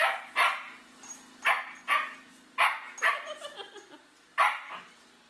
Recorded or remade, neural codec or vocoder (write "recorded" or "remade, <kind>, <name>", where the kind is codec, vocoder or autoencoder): recorded